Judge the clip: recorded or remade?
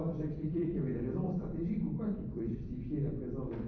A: remade